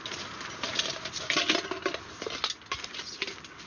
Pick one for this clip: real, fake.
real